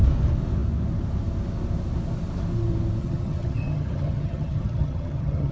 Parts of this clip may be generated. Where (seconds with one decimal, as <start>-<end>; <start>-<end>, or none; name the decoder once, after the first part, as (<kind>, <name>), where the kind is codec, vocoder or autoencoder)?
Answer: 3.0-5.5 (vocoder, HiFi-GAN)

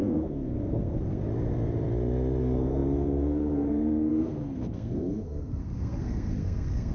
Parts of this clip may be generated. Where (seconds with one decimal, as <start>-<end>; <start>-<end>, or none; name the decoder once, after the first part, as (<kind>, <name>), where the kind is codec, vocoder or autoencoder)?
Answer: 0.0-1.2 (codec, SNAC); 2.4-6.9

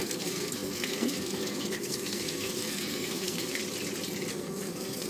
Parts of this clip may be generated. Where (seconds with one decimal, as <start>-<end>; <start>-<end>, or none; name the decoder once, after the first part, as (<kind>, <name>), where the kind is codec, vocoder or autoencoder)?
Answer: 0.0-3.6 (codec, SNAC); 4.3-5.1

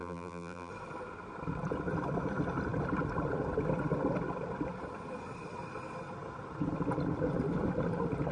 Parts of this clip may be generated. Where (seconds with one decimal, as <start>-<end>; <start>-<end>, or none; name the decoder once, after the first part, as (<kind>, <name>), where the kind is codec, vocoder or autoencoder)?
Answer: 0.0-0.7 (vocoder, BigVGAN v2)

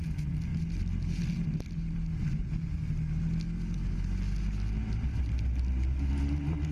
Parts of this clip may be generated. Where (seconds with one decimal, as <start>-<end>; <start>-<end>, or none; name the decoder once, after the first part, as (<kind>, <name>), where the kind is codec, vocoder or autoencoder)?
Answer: none

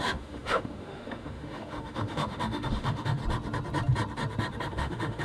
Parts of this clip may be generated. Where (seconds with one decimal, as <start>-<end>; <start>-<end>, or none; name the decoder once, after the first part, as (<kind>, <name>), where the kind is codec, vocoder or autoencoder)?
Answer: 0.0-3.2 (autoencoder, DAC-VAE); 4.7-5.2

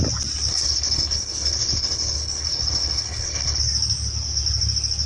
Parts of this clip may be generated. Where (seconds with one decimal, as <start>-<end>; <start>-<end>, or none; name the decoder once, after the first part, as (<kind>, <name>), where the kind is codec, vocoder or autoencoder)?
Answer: 0.5-3.6 (codec, HILCodec)

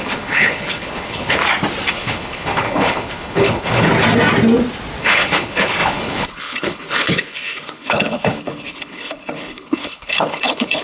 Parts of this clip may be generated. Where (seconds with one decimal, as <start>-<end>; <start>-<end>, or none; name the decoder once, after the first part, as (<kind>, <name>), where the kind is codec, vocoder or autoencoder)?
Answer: 0.0-1.4 (codec, HILCodec); 1.9-3.9; 5.0-10.8